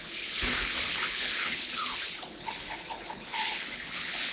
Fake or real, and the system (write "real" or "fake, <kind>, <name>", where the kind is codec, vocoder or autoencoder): fake, codec, HILCodec